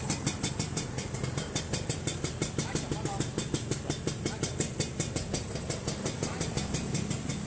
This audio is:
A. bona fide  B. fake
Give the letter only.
A